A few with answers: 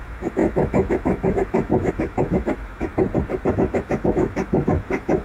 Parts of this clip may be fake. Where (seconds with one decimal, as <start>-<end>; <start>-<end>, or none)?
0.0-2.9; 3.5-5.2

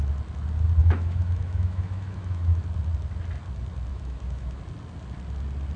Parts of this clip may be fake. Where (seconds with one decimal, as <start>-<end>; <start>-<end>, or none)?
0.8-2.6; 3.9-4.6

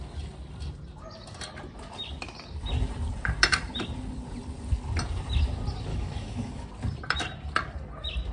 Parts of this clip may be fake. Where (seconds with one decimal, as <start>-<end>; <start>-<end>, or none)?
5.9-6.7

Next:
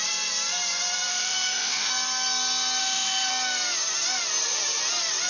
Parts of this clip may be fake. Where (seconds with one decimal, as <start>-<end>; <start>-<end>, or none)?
1.1-1.9; 2.8-3.3

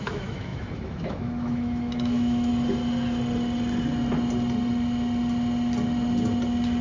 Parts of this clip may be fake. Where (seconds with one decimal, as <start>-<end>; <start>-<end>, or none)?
0.0-2.5

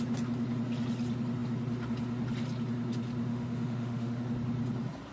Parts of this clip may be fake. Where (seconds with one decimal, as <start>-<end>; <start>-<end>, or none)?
3.3-4.2

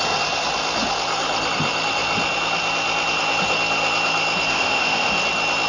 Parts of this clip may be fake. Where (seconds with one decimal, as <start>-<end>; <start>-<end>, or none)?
4.5-5.1

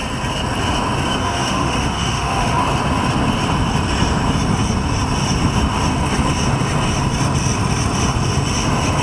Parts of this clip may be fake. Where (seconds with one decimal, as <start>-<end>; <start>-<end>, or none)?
1.2-2.6